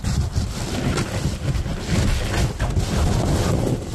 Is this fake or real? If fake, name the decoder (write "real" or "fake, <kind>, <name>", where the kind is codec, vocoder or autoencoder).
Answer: real